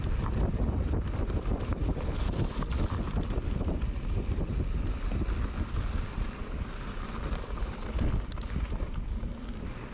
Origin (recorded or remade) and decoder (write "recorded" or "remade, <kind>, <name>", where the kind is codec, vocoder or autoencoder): recorded